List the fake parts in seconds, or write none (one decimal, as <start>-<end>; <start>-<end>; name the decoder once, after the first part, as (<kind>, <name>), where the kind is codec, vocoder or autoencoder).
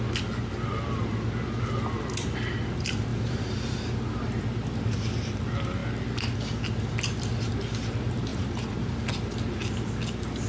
3.1-4.3 (vocoder, BigVGAN v2); 8.3-9.0